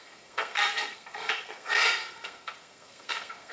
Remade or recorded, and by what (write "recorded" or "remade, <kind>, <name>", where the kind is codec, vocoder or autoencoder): remade, codec, SNAC